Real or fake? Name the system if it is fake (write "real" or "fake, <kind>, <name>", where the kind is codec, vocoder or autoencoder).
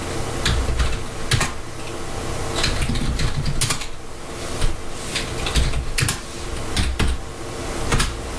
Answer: real